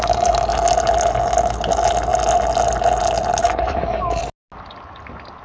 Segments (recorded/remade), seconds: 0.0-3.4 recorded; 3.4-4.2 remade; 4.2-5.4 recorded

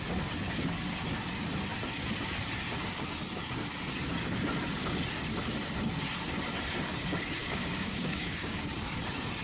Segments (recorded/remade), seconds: 0.0-7.4 recorded; 7.4-8.7 remade; 8.7-9.4 recorded